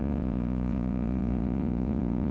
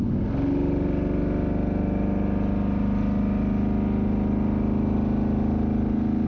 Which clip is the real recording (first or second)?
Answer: second